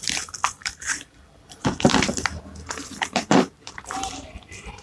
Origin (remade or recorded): remade